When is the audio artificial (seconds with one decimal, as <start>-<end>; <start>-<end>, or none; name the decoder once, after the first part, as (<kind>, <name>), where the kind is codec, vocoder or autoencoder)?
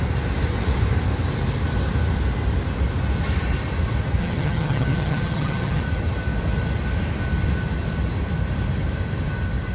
4.2-5.8 (vocoder, HiFi-GAN)